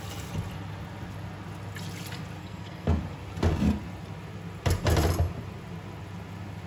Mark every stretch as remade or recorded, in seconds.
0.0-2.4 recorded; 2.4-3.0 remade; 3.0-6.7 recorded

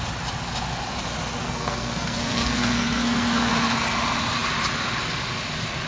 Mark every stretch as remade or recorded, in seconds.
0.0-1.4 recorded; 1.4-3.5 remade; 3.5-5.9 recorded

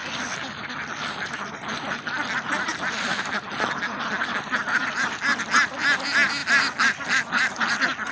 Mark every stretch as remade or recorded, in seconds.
0.0-8.1 recorded

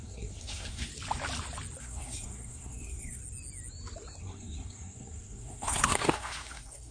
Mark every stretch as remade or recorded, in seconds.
0.0-0.9 remade; 0.9-1.8 recorded; 1.8-3.2 remade; 3.2-4.2 recorded; 4.2-6.9 remade